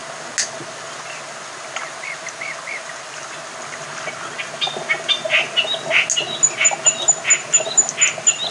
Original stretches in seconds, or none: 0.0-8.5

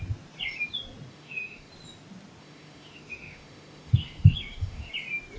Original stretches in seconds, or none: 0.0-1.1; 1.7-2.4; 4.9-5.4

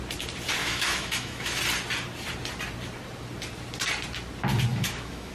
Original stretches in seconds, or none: 0.0-0.6; 1.6-4.7

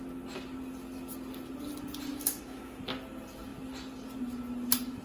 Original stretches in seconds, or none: 0.0-2.1; 2.8-5.0

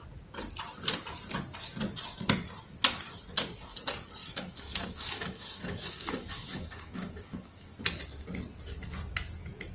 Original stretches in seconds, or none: 0.0-4.2; 7.8-9.7

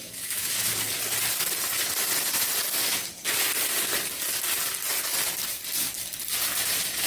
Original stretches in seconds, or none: 0.7-7.1

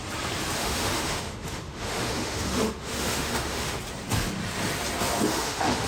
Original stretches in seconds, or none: 0.0-0.6; 3.8-5.3